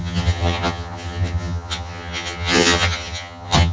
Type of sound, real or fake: fake